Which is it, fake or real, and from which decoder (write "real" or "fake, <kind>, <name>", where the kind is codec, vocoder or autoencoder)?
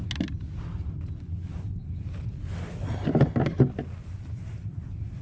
real